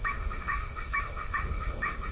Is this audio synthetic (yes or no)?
yes